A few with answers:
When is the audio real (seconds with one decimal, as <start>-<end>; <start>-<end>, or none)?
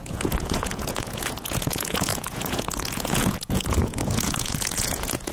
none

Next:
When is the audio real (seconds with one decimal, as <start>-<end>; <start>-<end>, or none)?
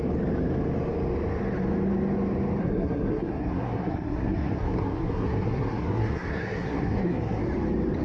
0.0-2.6; 7.4-8.0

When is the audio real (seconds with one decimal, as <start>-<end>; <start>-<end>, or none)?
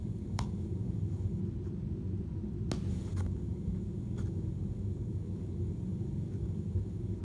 1.4-2.9